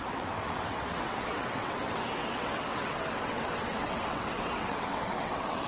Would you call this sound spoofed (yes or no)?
yes